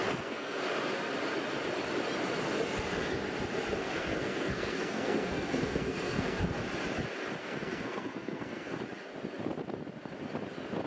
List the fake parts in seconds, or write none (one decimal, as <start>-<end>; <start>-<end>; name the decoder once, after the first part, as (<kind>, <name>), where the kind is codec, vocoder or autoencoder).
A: 0.0-0.6 (codec, SNAC); 3.8-6.4; 7.4-8.8